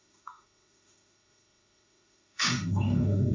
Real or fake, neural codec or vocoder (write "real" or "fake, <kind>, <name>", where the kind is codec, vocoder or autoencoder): fake, autoencoder, DAC-VAE